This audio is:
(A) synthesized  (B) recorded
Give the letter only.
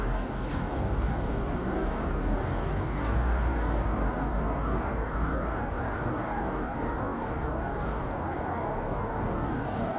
A